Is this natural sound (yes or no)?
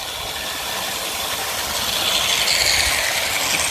yes